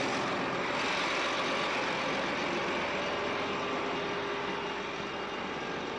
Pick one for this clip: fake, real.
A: real